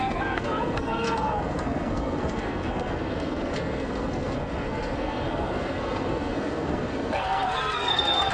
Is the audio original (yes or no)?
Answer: no